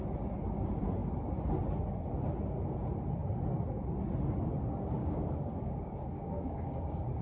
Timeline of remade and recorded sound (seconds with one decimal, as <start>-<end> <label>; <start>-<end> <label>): 0.0-5.0 recorded; 5.0-7.2 remade